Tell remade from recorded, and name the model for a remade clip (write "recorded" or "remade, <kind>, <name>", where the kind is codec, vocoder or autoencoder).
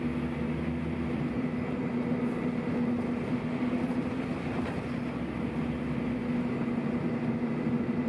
recorded